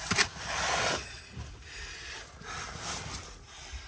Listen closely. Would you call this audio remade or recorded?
recorded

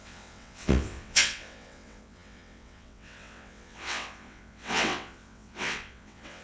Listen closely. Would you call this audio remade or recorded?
remade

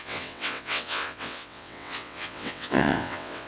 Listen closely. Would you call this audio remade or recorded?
remade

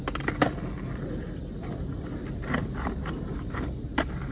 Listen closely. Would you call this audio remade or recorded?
recorded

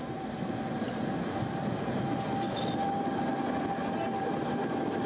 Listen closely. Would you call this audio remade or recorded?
recorded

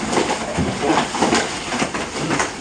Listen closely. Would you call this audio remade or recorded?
recorded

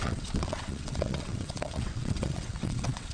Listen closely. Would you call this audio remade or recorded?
remade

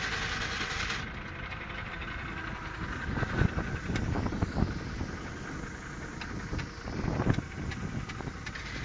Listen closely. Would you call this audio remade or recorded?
recorded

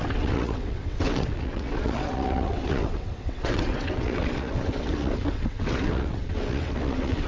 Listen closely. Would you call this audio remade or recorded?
remade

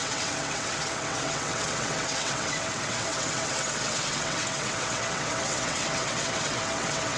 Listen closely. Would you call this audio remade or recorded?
remade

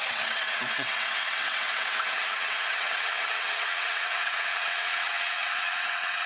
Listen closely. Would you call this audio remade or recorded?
remade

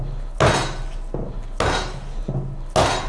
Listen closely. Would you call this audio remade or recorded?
recorded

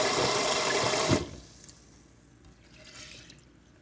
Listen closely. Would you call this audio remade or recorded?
recorded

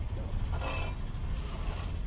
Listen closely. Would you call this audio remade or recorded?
recorded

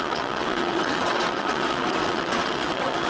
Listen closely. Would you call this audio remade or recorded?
remade